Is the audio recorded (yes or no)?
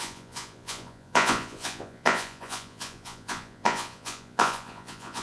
no